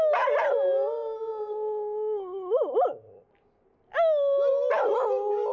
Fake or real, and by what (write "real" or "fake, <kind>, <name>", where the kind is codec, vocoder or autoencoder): real